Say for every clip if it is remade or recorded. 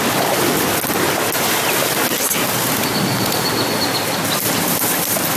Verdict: recorded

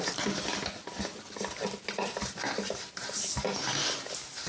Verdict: recorded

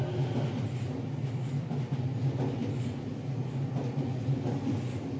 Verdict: recorded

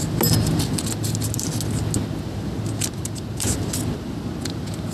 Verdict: recorded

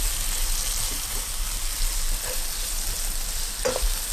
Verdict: recorded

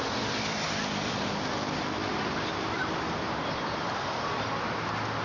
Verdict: recorded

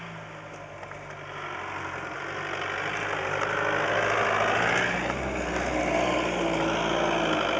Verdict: recorded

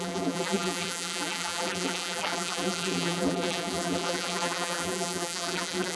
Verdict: remade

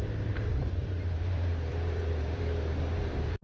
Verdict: remade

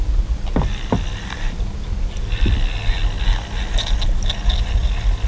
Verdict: recorded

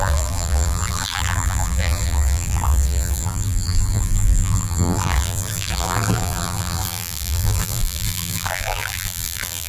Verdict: remade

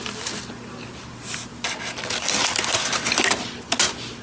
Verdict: recorded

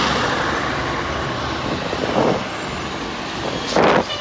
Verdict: recorded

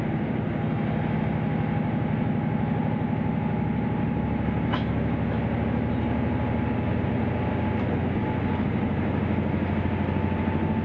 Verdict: recorded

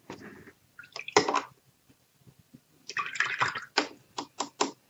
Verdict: remade